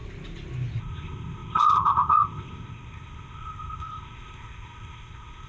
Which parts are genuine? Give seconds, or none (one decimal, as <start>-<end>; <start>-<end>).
0.0-0.8

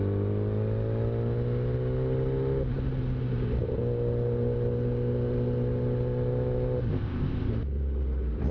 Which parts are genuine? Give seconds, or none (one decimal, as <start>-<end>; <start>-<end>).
0.0-6.9; 7.5-8.5